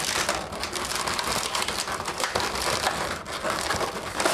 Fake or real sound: fake